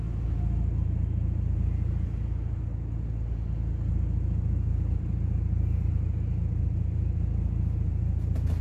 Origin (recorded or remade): recorded